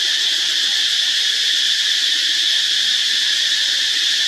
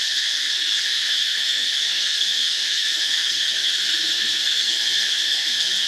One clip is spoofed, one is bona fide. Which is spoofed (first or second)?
second